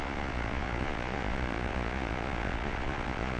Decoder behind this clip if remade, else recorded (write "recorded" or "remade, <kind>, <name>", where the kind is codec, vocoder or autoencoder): remade, vocoder, Vocos